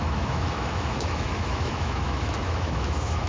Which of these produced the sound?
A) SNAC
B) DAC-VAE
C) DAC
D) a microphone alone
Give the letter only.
B